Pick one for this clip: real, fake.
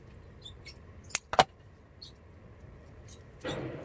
real